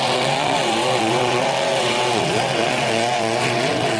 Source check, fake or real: fake